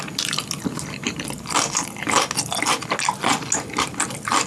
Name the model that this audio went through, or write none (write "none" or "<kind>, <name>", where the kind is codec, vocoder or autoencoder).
none